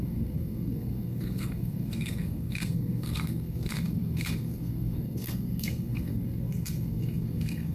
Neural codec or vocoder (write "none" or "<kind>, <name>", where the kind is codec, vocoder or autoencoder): codec, SNAC